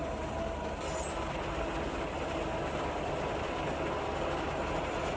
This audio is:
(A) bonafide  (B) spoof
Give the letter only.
A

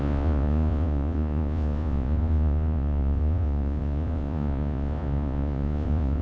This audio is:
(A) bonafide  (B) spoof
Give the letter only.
B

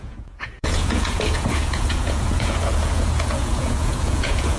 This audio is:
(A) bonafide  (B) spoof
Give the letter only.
B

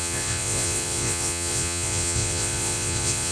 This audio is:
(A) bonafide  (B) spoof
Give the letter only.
B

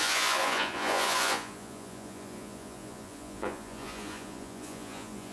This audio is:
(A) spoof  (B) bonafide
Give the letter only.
A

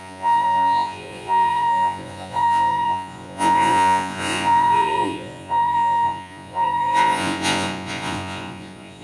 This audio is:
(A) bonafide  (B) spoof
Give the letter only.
B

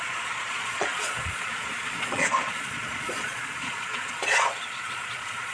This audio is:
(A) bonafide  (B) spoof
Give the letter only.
B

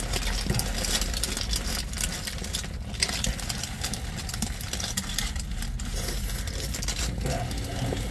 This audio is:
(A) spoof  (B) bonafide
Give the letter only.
B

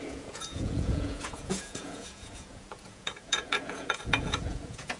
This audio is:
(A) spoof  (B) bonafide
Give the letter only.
A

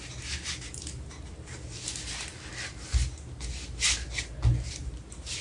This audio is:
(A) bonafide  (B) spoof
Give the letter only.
A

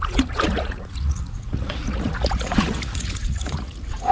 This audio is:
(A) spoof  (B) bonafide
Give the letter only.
A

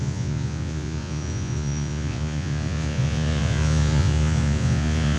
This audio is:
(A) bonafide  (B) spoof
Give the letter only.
B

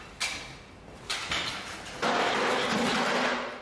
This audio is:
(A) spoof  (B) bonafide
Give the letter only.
B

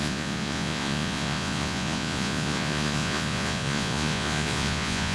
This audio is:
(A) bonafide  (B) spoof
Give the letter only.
B